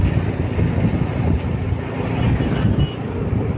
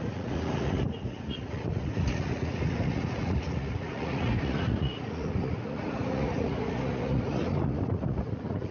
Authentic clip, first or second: first